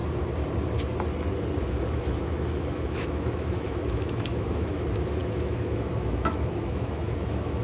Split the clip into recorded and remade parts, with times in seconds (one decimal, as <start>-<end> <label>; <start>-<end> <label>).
0.0-2.0 recorded; 2.0-7.6 remade